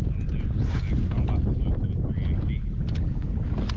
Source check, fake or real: real